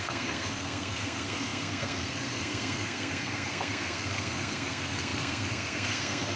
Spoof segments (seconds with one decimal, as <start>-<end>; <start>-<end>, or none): 0.0-6.4